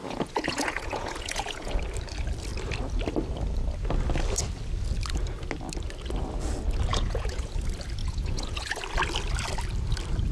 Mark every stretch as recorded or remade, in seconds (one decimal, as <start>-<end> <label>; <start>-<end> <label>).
0.0-1.7 remade; 1.7-6.9 recorded; 6.9-7.5 remade; 7.5-8.0 recorded; 8.0-8.8 remade; 8.8-10.3 recorded